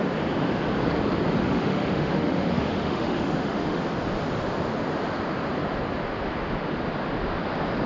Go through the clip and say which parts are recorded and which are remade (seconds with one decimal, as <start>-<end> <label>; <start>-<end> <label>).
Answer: 0.0-1.4 recorded; 1.4-3.8 remade; 3.8-7.9 recorded